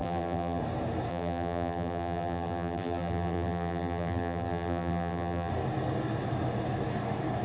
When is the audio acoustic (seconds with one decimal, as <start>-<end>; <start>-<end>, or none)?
0.6-1.1; 5.5-7.4